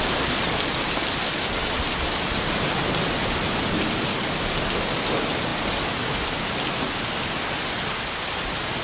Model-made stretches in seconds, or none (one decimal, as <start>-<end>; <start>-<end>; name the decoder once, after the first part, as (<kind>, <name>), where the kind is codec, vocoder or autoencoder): none